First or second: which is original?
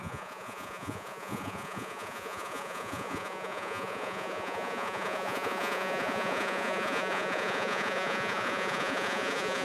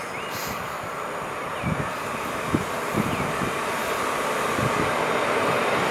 second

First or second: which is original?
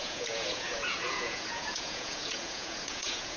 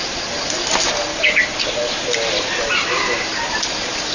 second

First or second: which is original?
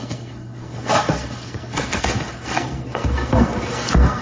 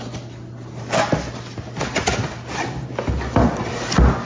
second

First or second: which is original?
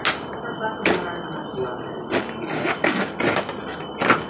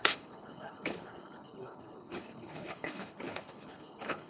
first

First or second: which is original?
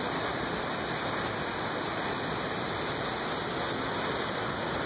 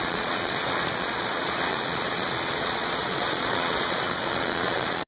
first